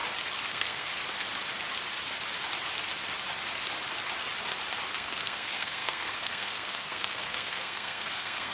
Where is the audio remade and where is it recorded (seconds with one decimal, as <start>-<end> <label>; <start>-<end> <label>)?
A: 0.0-0.5 recorded; 0.5-0.9 remade; 0.9-4.9 recorded; 4.9-8.5 remade